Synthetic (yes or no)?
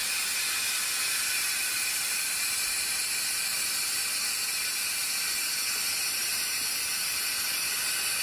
no